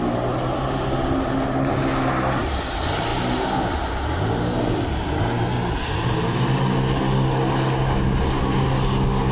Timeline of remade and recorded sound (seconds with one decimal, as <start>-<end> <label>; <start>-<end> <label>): 0.0-9.3 recorded